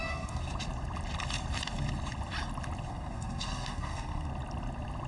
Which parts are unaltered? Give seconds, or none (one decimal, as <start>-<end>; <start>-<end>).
0.5-2.9; 4.3-5.1